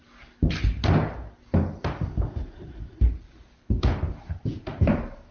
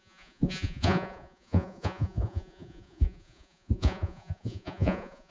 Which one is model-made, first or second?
second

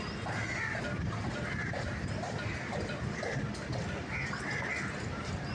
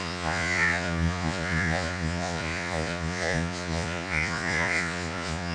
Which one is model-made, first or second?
second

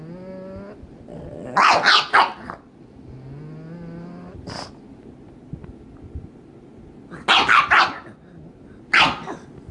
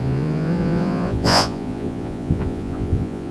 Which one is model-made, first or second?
second